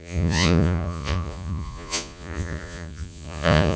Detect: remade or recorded remade